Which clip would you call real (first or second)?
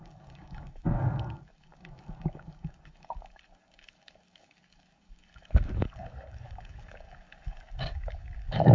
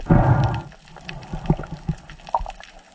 second